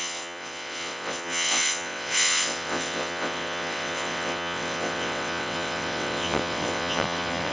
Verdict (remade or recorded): remade